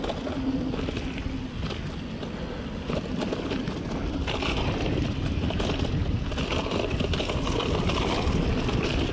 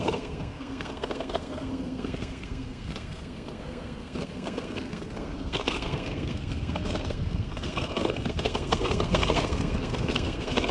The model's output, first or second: second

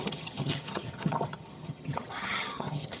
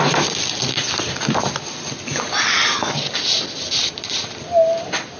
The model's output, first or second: first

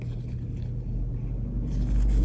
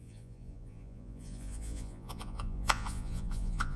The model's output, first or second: second